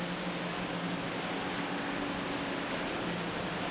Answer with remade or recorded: recorded